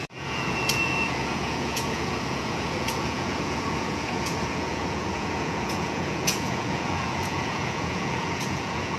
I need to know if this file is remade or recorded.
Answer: remade